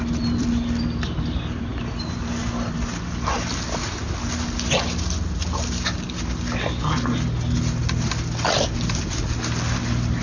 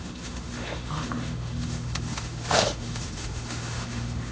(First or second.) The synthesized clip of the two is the second